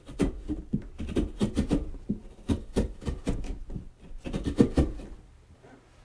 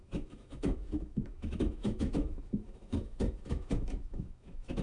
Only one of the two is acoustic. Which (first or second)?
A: first